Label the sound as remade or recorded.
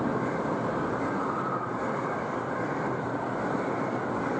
recorded